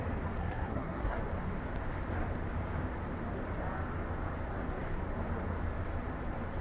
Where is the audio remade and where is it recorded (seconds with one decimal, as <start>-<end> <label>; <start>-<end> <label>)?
0.0-0.4 recorded; 0.4-1.2 remade; 1.2-6.6 recorded